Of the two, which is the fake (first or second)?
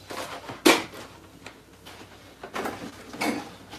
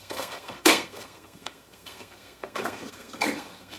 second